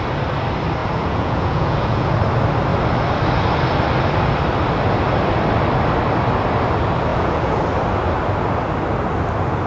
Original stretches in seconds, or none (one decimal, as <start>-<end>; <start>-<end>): 0.0-0.8; 2.1-7.1; 7.6-9.7